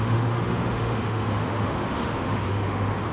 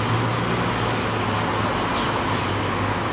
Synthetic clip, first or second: first